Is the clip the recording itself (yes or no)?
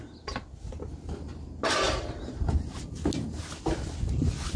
yes